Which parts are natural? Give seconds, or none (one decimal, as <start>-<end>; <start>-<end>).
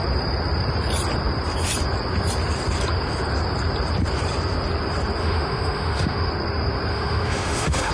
0.0-5.2; 6.3-6.9